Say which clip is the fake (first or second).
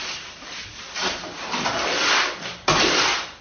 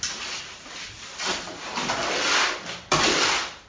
first